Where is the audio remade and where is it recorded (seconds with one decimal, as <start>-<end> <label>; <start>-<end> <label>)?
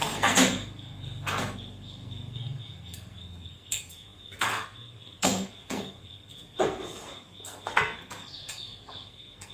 0.0-9.5 remade